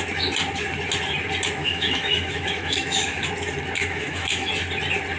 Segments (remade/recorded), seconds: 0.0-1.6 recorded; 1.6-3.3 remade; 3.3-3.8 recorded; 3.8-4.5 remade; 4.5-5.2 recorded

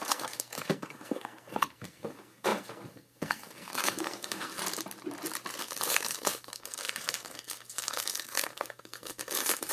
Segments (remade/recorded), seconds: 0.0-4.6 remade; 4.6-5.6 recorded; 5.6-9.7 remade

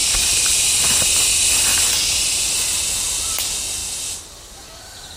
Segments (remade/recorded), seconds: 0.0-5.2 recorded

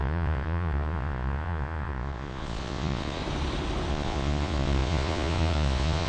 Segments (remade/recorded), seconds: 0.0-3.2 remade; 3.2-3.9 recorded; 3.9-6.1 remade